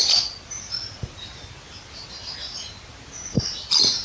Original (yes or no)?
yes